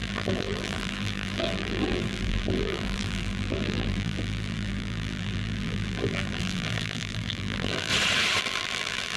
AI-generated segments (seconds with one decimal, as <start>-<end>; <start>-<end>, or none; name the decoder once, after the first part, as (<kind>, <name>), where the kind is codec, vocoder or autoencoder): 0.0-7.9 (vocoder, BigVGAN v2); 8.4-9.2